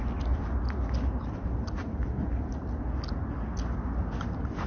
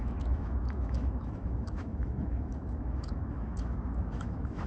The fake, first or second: second